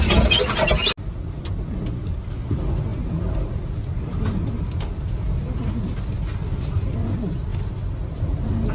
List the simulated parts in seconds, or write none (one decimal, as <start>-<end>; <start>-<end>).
none

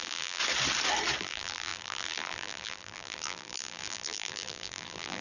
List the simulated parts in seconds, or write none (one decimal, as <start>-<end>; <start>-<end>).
0.0-0.4; 1.2-5.2

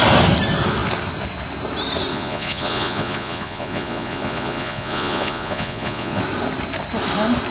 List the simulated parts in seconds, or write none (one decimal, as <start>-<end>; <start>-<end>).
2.1-6.2